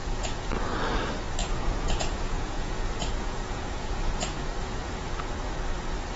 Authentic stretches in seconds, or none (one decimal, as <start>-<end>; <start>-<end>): 0.5-1.4; 5.1-6.2